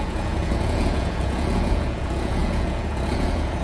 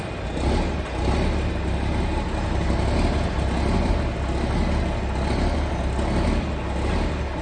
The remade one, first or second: first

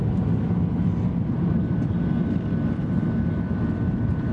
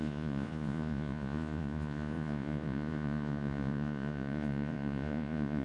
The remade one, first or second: second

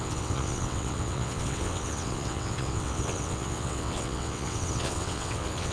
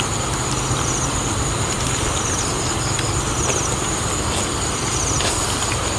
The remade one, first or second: first